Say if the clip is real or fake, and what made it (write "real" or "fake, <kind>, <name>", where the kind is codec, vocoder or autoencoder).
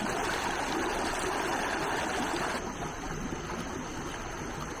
real